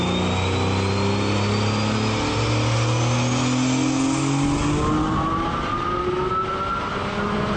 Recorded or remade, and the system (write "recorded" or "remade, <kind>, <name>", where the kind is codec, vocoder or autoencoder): recorded